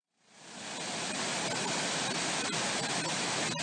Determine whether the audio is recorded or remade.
recorded